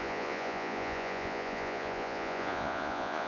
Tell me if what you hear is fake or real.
fake